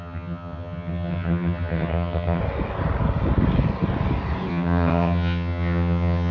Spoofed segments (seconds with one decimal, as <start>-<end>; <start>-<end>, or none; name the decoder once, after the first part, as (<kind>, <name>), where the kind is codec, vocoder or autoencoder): 0.0-2.4 (vocoder, HiFi-GAN); 4.5-6.3